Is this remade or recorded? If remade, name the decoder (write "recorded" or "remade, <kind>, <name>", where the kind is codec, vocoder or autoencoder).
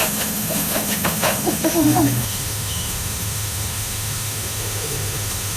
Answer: remade, autoencoder, DAC-VAE